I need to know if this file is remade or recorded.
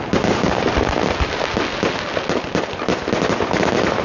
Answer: recorded